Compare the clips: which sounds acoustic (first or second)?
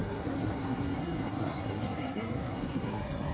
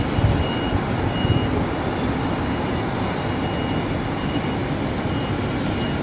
second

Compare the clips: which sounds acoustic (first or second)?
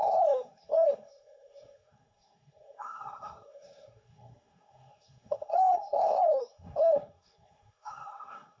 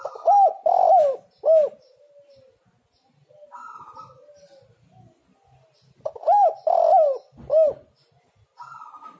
second